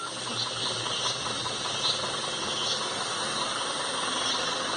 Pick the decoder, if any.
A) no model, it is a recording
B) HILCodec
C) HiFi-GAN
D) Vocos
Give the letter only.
A